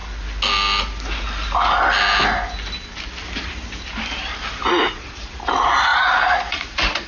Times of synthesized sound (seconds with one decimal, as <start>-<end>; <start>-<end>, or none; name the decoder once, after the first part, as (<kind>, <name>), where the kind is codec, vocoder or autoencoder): 4.6-5.4 (vocoder, Vocos); 5.9-7.1